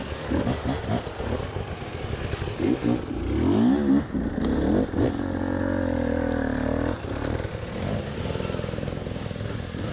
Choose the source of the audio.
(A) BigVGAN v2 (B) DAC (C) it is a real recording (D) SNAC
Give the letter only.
C